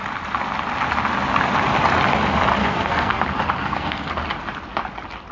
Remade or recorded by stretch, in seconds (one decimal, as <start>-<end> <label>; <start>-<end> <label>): 0.0-2.6 recorded; 2.6-3.2 remade; 3.2-3.6 recorded; 3.6-4.1 remade; 4.1-5.3 recorded